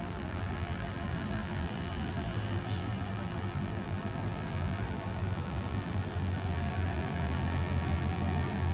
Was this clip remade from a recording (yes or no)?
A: yes